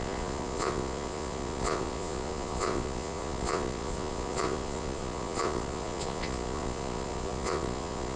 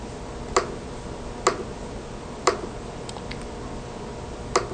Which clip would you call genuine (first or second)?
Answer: second